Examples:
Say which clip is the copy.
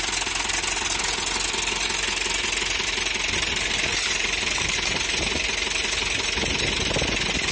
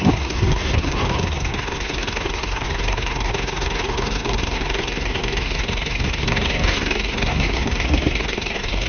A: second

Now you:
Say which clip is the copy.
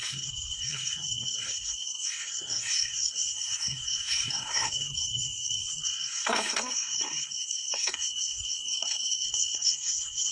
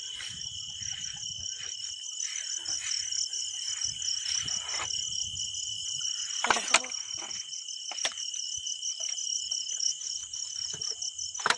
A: first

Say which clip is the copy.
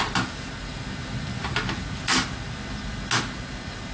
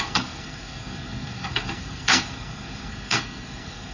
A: second